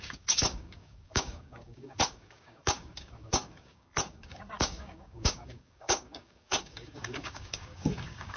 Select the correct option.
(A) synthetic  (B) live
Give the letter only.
A